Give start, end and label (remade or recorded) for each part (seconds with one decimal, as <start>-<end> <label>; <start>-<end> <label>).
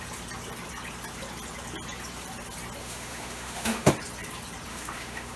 0.0-2.8 recorded; 2.8-3.9 remade; 3.9-4.7 recorded; 4.7-5.4 remade